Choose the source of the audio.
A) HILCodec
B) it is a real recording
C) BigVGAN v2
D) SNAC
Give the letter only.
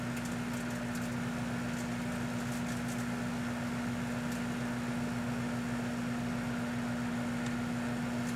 B